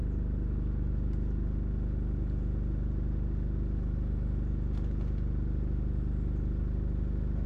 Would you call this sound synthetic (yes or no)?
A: no